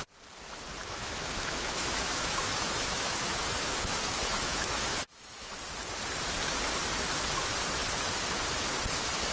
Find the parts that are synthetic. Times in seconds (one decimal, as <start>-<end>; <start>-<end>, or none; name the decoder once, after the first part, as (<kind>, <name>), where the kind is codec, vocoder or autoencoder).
0.8-5.5 (autoencoder, DAC-VAE)